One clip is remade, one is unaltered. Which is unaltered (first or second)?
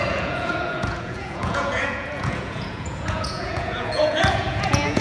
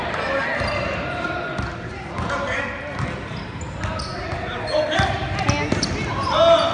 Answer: second